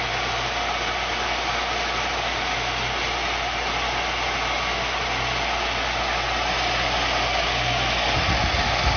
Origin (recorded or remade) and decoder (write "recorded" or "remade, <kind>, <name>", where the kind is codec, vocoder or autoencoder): recorded